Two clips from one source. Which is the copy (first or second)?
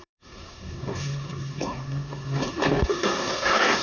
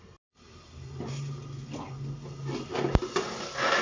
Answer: first